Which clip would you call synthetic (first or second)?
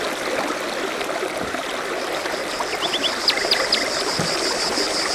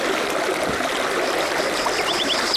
first